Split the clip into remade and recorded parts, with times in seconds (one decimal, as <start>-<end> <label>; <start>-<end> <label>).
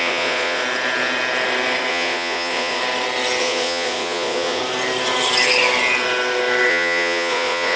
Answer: 0.0-0.6 remade; 0.6-1.9 recorded; 1.9-2.8 remade; 2.8-3.4 recorded; 3.4-4.6 remade; 4.6-6.7 recorded; 6.7-7.8 remade